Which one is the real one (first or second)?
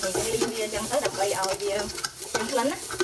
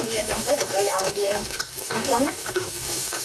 first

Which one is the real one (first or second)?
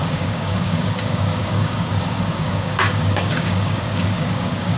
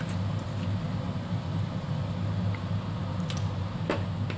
second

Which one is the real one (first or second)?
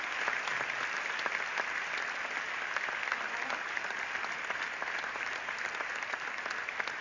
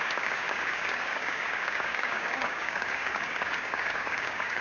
first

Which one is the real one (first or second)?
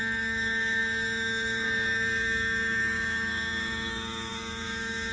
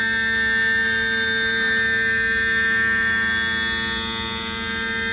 second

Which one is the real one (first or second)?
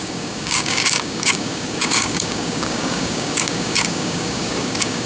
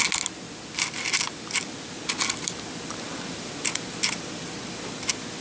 second